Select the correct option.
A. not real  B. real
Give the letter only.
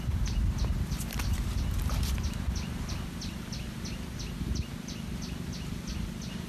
B